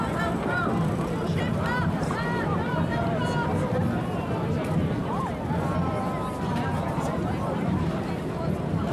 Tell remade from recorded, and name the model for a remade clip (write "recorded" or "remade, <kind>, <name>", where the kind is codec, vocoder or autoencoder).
recorded